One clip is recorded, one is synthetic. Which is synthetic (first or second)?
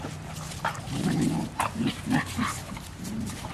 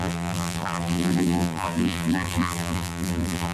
second